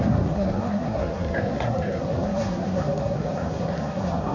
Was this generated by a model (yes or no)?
yes